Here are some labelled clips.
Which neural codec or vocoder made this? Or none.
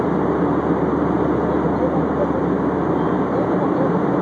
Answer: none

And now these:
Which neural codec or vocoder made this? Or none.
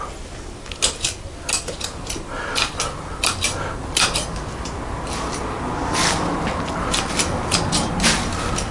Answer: none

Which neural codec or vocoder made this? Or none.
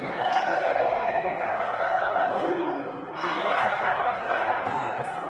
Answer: codec, SNAC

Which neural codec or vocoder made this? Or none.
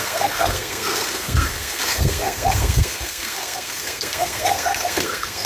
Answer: codec, SNAC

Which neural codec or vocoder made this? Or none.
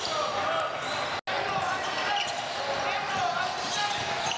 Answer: none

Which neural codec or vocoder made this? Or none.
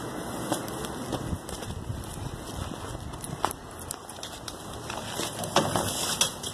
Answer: none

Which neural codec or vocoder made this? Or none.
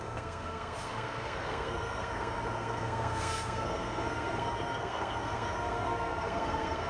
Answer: codec, SNAC